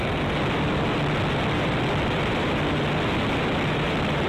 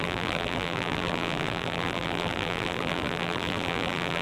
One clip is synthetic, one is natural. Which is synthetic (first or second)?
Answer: second